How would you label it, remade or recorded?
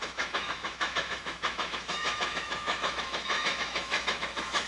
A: remade